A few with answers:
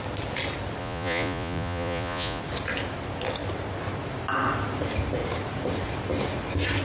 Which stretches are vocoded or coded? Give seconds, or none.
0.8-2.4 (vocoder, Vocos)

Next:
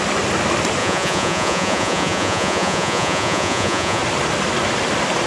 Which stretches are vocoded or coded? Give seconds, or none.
0.8-4.0 (vocoder, Vocos)

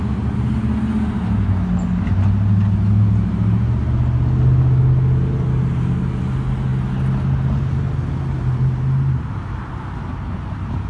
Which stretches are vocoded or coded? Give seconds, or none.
none

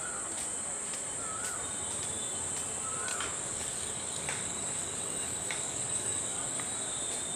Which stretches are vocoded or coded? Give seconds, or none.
3.1-6.6 (codec, DAC)

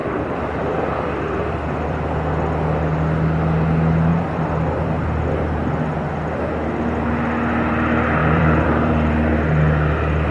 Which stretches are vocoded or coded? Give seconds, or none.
0.0-2.3 (vocoder, BigVGAN v2); 4.1-5.3; 8.2-8.9